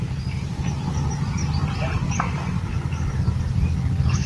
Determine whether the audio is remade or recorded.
recorded